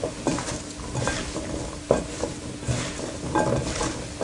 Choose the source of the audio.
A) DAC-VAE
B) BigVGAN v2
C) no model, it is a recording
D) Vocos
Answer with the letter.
C